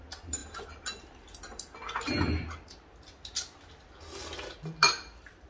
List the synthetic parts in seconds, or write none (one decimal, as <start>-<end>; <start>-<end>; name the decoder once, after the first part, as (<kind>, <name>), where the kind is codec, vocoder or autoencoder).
none